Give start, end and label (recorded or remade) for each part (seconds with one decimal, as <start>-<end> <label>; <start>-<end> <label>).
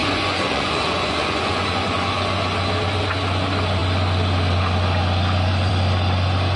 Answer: 0.0-2.4 remade; 2.4-6.6 recorded